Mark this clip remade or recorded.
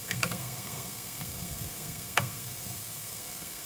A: remade